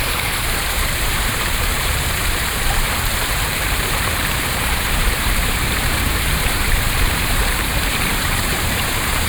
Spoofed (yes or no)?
yes